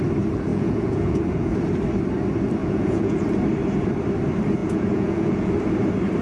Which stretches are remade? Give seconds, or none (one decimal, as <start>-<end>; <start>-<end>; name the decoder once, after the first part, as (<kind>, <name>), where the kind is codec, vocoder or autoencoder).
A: 0.5-1.5 (vocoder, Vocos); 2.6-3.2; 4.6-5.5